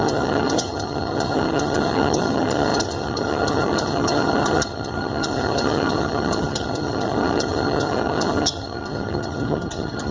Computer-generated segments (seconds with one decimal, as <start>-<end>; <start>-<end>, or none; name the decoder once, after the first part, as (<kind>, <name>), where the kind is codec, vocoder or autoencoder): 0.0-10.1 (vocoder, HiFi-GAN)